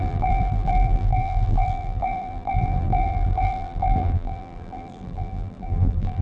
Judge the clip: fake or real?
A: fake